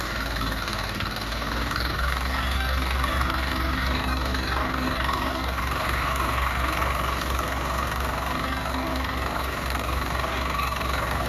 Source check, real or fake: fake